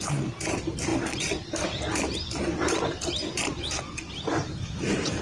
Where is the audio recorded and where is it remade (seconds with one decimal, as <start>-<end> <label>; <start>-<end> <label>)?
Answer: 0.0-5.2 recorded